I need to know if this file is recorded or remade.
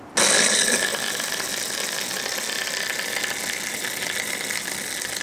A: recorded